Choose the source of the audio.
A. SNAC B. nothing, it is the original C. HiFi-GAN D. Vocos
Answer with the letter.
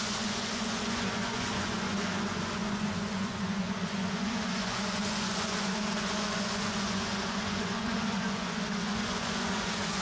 D